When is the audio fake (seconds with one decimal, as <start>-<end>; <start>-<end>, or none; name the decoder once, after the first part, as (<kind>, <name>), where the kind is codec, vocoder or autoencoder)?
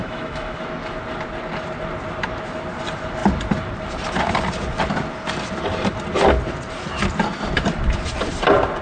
0.0-0.6 (autoencoder, DAC-VAE)